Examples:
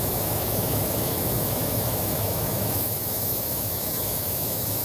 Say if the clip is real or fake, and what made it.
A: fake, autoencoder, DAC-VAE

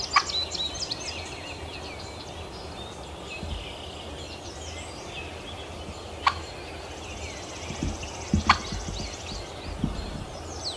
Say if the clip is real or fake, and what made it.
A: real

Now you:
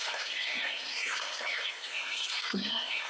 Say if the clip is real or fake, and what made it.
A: fake, codec, SNAC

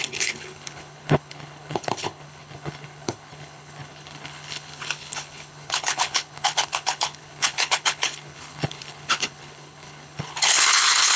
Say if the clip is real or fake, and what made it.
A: fake, codec, HILCodec